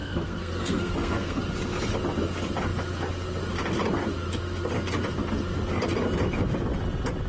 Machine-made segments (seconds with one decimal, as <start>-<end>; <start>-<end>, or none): 0.0-1.4